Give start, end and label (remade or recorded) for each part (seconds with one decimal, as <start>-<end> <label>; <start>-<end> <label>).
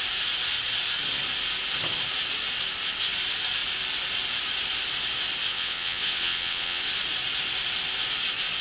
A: 0.0-5.5 recorded; 5.5-6.8 remade; 6.8-8.6 recorded